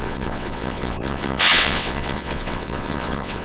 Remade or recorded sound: remade